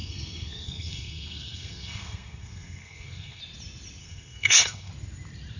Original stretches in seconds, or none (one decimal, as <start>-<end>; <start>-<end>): 3.4-4.0; 4.9-5.6